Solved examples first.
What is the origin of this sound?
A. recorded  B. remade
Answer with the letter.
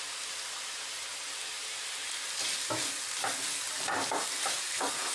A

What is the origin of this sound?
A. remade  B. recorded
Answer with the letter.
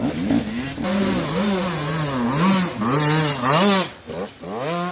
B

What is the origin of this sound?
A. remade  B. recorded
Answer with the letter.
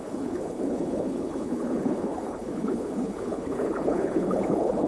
A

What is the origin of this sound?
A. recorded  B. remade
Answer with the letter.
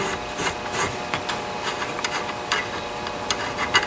A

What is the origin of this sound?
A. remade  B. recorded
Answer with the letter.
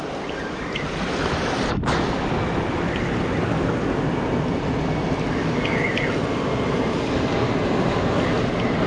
B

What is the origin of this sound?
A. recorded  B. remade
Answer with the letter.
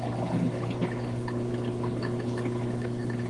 B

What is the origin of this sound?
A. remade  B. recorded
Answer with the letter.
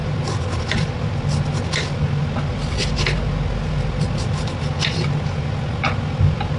B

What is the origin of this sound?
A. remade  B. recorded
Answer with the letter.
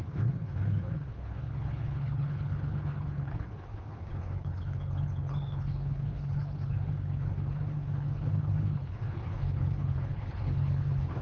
A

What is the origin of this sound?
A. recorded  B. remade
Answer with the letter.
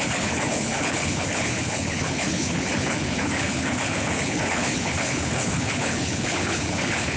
B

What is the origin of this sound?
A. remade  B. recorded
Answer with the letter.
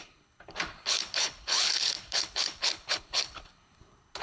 A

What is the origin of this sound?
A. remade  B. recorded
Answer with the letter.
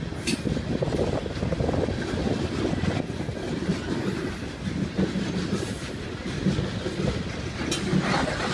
B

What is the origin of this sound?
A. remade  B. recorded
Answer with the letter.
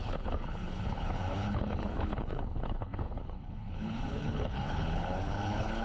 A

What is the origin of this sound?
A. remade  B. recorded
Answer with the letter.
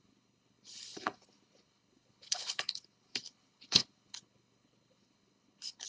A